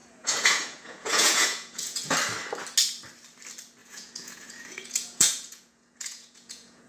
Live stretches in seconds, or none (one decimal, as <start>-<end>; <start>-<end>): 2.1-3.8